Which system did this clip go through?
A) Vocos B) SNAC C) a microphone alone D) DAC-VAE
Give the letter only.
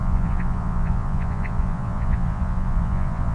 A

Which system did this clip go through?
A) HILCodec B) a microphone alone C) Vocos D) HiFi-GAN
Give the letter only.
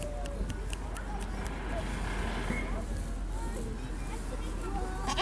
B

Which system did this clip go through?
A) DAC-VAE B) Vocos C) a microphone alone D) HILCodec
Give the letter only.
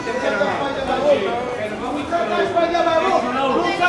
C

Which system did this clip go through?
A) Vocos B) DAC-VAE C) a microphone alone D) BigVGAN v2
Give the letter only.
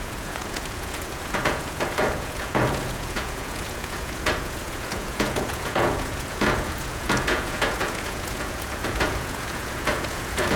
A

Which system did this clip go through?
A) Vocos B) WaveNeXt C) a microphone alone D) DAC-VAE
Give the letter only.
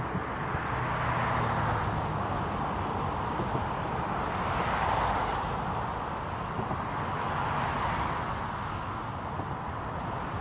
C